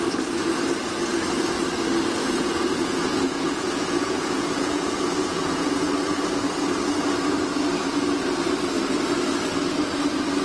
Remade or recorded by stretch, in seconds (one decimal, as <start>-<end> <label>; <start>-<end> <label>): 0.0-2.2 recorded; 2.2-5.9 remade; 5.9-10.4 recorded